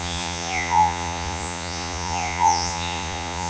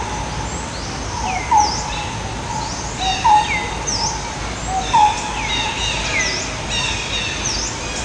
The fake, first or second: first